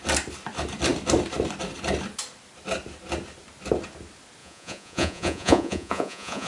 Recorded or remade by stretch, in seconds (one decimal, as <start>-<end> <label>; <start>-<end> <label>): 0.0-4.4 recorded; 4.4-6.5 remade